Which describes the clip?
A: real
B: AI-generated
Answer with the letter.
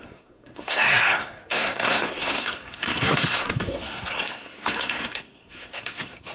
B